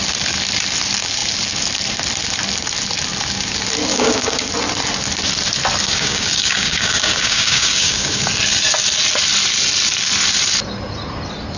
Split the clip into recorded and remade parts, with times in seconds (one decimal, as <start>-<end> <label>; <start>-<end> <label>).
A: 0.0-3.9 recorded; 3.9-4.5 remade; 4.5-5.8 recorded; 5.8-8.2 remade; 8.2-11.6 recorded